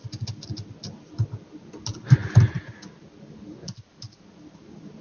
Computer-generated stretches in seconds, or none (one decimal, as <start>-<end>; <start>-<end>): none